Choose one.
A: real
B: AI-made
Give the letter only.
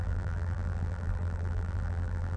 B